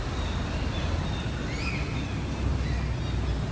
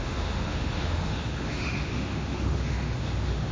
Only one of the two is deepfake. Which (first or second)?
second